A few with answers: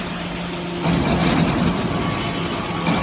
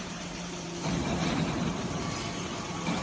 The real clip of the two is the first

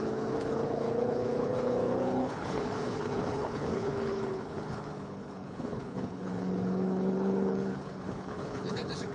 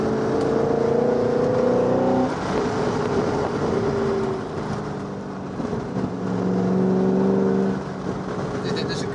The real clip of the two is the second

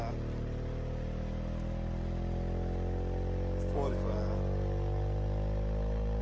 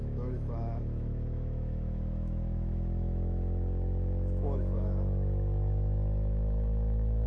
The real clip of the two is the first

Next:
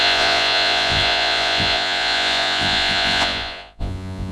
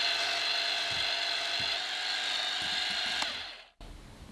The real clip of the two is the second